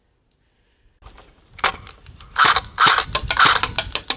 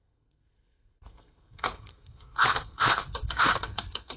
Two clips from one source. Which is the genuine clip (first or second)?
first